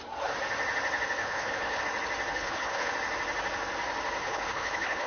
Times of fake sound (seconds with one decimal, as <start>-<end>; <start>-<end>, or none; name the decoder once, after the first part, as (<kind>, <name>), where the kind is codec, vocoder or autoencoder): 1.2-1.8 (codec, HILCodec); 2.3-2.9; 4.2-5.1